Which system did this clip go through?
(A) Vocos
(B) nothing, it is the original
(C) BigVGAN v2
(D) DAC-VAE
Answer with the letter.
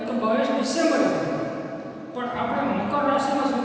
B